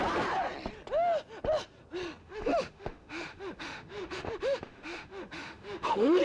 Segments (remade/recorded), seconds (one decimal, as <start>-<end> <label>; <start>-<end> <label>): 0.0-2.2 recorded; 2.2-6.2 remade